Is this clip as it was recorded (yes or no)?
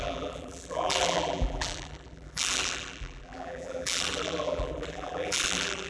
no